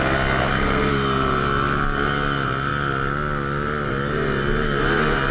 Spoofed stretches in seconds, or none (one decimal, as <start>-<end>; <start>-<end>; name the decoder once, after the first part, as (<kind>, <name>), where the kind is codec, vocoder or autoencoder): 0.4-0.9 (codec, SNAC)